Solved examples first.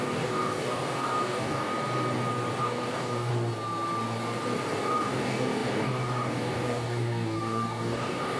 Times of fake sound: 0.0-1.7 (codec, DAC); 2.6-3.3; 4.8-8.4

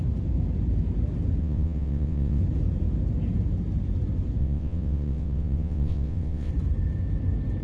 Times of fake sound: 1.4-2.4 (vocoder, WaveNeXt); 4.4-6.5

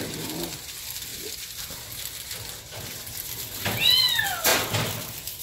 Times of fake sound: none

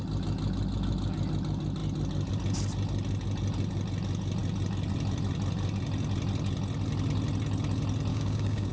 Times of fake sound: 8.1-8.7 (codec, DAC)

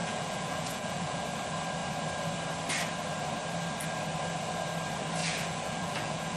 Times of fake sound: 0.0-1.2 (vocoder, Vocos); 5.2-6.4

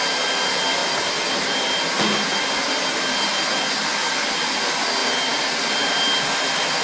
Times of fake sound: none

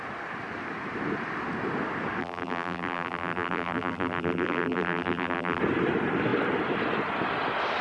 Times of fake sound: 2.2-5.6 (vocoder, BigVGAN v2)

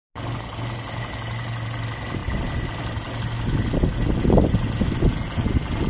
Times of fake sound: none